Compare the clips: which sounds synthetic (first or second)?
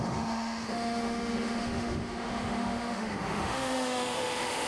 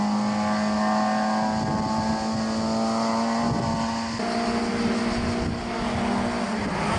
first